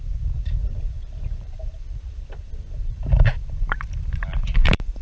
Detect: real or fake fake